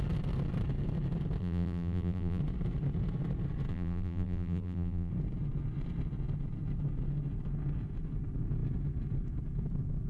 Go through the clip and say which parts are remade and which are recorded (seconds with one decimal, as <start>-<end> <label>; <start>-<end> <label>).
0.0-1.4 recorded; 1.4-2.4 remade; 2.4-3.7 recorded; 3.7-5.1 remade; 5.1-10.1 recorded